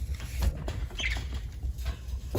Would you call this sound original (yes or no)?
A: yes